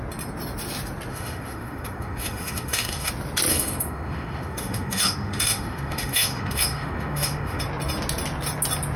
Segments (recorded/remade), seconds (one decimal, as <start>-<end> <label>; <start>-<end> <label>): 0.0-1.1 recorded; 1.1-3.1 remade; 3.1-3.5 recorded; 3.5-7.6 remade; 7.6-9.0 recorded